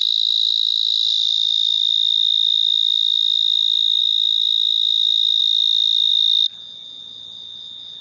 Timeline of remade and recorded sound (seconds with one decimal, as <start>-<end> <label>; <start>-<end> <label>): 0.0-1.8 remade; 1.8-4.0 recorded; 4.0-5.4 remade; 5.4-8.0 recorded